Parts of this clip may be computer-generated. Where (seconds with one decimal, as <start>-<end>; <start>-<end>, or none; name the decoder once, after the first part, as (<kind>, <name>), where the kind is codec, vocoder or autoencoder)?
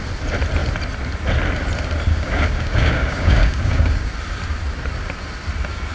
2.1-4.1 (codec, DAC)